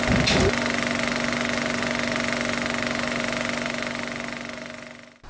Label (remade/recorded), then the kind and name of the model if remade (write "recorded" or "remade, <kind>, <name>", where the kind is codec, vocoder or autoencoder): recorded